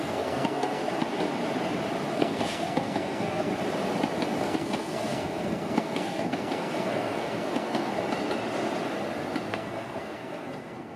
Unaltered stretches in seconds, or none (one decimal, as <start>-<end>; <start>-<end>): 0.8-2.1; 3.5-4.4; 7.9-9.5